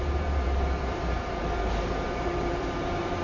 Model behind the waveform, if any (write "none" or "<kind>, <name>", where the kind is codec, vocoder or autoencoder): vocoder, BigVGAN v2